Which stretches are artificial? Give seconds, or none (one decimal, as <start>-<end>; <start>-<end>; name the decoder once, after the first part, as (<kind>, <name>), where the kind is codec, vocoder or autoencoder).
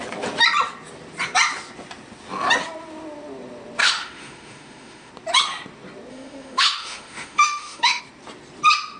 3.8-5.1 (autoencoder, DAC-VAE); 6.1-8.0